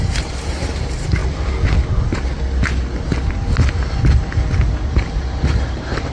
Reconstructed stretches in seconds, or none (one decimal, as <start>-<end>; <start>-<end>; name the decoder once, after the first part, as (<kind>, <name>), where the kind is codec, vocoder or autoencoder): 0.0-1.2 (vocoder, BigVGAN v2); 4.9-6.1

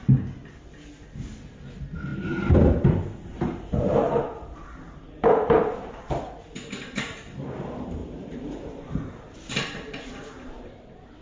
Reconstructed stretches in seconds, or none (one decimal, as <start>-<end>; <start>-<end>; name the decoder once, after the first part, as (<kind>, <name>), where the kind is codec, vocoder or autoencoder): 2.1-6.1 (vocoder, BigVGAN v2); 8.0-10.7